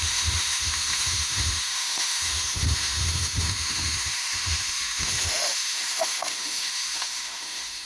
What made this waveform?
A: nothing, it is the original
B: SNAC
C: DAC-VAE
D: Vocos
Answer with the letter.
C